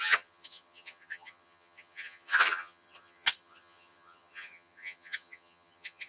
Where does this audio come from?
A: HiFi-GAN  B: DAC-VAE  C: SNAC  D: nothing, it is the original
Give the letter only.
A